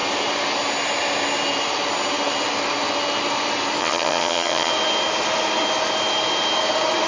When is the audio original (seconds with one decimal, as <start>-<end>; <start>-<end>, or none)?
0.0-3.8; 4.7-7.1